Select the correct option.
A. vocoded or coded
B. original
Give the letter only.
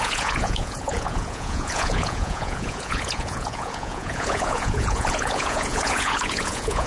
A